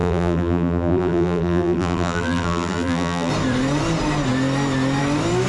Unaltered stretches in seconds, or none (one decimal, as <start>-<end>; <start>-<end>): 3.3-5.5